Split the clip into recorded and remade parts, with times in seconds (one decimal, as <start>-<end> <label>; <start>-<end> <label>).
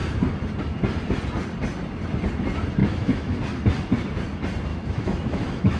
0.0-2.8 recorded; 2.8-3.4 remade; 3.4-4.7 recorded; 4.7-5.8 remade